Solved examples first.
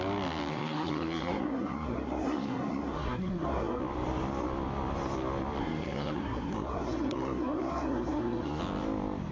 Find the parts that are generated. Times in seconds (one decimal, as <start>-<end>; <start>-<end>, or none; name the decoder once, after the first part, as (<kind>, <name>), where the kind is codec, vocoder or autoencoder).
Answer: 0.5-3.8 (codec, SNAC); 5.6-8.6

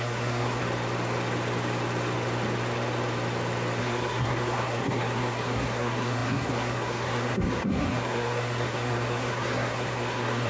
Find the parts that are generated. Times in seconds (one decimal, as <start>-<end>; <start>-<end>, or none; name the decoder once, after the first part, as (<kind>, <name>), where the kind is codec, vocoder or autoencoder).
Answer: 0.0-0.6 (codec, SNAC); 3.8-10.5

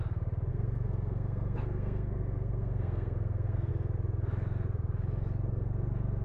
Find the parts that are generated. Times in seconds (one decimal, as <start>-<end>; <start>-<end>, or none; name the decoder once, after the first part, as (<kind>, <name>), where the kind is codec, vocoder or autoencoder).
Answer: 0.5-3.7 (codec, SNAC)

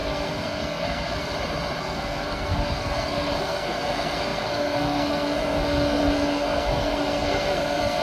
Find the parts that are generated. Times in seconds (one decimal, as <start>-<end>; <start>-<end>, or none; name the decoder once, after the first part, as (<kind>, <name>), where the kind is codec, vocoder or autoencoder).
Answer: 0.0-1.3 (codec, SNAC); 1.8-8.0

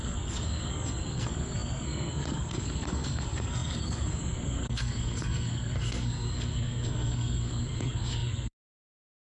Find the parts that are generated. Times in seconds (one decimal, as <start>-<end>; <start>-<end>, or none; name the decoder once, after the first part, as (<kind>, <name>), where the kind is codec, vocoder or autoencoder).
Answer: 0.0-9.3 (codec, SNAC)

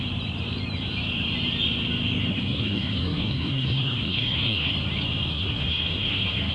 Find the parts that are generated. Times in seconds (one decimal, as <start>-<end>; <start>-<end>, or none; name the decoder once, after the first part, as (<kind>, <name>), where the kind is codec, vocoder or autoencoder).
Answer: 2.3-4.7 (codec, SNAC); 5.3-6.5

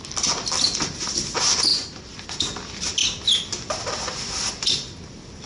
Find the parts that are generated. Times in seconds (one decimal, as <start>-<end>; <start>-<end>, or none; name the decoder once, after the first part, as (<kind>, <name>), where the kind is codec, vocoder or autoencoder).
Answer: none